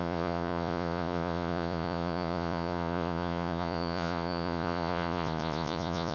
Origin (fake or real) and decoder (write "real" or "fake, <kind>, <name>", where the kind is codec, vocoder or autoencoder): fake, vocoder, Vocos